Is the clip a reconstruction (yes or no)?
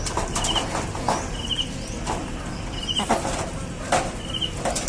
no